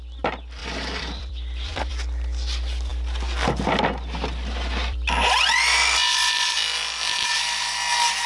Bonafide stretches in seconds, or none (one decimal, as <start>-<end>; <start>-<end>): 0.0-0.6; 1.9-8.3